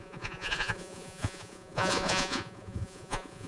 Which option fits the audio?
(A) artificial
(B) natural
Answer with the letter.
A